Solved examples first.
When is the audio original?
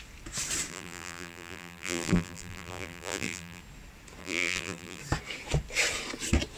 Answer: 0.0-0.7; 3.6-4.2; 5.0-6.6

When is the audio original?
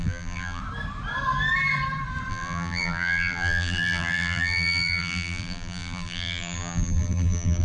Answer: 0.6-2.3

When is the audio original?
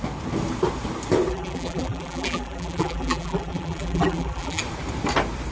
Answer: 0.0-1.3; 4.6-5.5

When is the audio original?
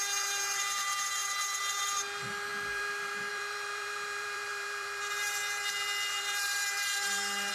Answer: none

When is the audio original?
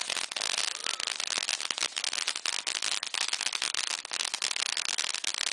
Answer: 0.0-5.5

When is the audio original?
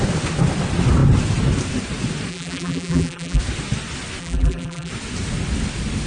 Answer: 0.0-2.3; 3.4-4.2; 4.9-6.1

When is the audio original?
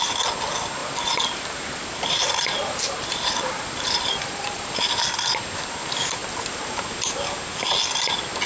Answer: 0.0-0.8; 4.7-8.5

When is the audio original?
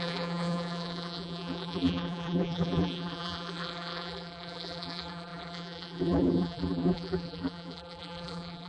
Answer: none